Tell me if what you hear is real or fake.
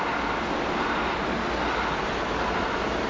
real